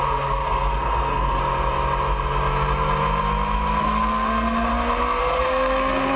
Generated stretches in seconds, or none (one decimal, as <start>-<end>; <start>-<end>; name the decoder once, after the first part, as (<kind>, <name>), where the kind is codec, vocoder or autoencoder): 0.0-1.4 (codec, SNAC); 3.8-4.7; 5.2-6.2